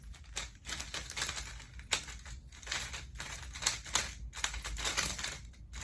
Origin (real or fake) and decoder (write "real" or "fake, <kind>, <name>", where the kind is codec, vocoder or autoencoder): real